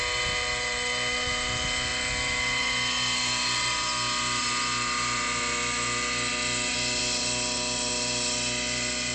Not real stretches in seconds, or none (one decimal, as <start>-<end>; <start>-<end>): none